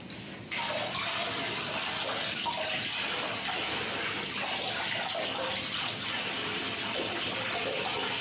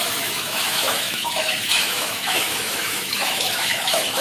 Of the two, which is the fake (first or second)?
second